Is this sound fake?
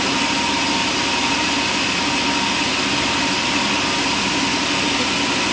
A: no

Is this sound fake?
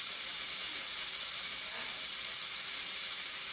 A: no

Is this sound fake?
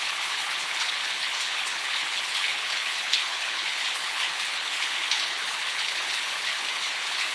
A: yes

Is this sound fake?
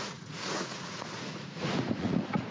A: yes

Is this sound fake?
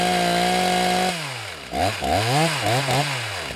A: no